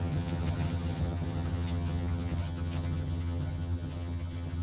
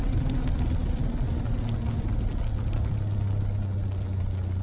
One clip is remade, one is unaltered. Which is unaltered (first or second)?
second